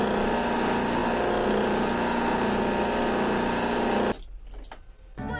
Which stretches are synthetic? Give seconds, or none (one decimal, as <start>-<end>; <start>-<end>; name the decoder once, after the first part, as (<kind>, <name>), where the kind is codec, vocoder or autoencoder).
none